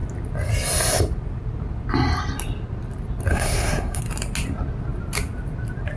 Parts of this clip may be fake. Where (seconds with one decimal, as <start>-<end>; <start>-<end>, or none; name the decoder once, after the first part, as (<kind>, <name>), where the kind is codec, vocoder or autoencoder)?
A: 3.3-4.0 (codec, SNAC)